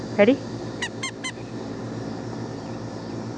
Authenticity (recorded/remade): recorded